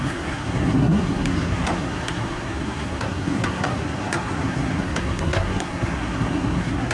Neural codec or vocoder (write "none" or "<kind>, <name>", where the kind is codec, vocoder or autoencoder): codec, SNAC